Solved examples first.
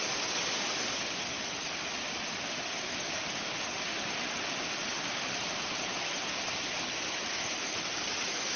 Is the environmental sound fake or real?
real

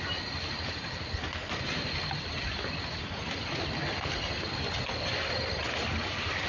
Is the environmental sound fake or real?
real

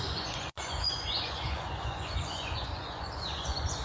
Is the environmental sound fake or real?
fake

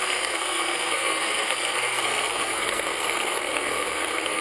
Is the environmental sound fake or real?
fake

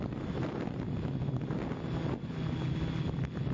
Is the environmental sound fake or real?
real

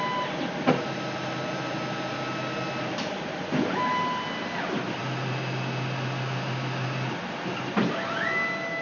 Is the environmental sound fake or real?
real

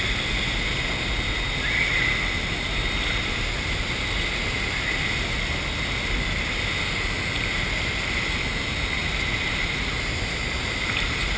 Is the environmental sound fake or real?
real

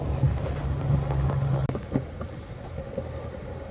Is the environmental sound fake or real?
real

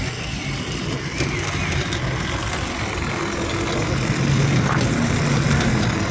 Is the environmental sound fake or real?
real